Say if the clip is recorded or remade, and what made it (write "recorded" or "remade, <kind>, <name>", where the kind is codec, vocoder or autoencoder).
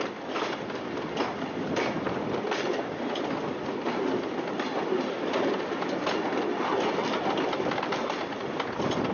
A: recorded